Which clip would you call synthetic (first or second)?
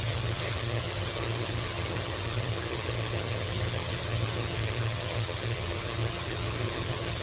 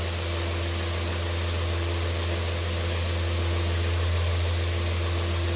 first